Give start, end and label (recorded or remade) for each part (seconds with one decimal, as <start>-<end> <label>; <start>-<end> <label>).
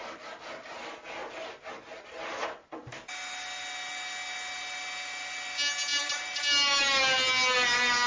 0.0-8.1 recorded